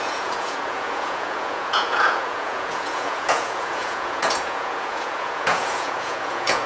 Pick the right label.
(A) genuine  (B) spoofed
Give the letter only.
B